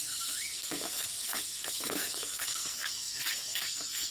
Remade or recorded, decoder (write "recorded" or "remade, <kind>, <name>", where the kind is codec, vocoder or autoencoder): remade, codec, SNAC